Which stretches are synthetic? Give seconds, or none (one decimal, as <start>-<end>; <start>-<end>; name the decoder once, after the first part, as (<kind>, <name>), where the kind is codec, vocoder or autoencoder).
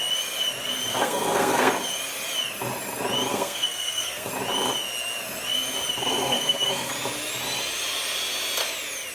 0.9-1.7 (codec, SNAC); 3.3-4.3; 6.0-6.9